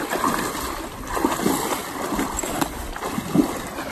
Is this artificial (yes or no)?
no